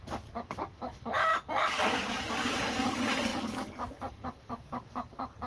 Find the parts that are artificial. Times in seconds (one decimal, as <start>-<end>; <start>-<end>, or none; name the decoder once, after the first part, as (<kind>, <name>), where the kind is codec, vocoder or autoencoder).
0.0-1.3 (codec, DAC); 2.3-5.5

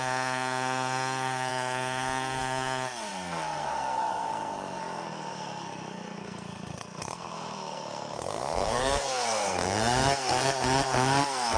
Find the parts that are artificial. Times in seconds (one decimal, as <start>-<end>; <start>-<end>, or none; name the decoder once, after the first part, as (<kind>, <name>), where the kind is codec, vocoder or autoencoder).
0.0-11.6 (codec, SNAC)